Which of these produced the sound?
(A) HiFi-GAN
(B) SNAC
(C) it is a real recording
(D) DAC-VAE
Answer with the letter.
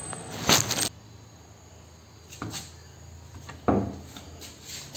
C